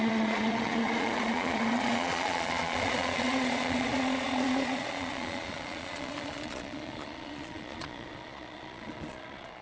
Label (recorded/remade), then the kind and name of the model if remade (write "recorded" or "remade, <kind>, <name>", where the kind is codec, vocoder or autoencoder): remade, vocoder, Vocos